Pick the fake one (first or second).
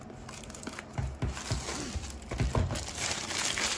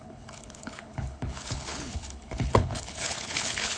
second